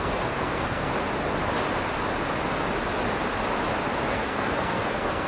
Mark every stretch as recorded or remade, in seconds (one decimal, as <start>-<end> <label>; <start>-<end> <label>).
0.0-0.9 remade; 0.9-4.1 recorded; 4.1-5.3 remade

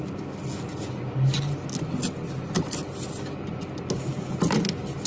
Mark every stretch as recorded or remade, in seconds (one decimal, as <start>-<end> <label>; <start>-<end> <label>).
0.0-5.1 recorded

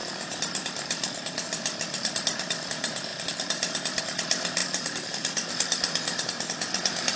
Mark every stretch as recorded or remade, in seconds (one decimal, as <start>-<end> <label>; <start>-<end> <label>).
0.0-7.2 recorded